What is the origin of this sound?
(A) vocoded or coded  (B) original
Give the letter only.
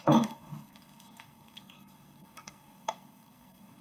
A